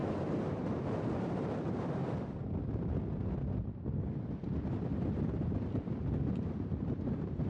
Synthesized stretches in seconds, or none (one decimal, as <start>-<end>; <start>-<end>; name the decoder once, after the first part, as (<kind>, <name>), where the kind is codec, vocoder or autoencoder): 0.5-2.0 (vocoder, BigVGAN v2); 6.3-7.5